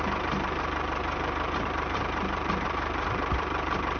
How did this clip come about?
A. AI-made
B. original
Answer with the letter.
A